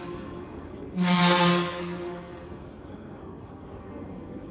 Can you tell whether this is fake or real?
fake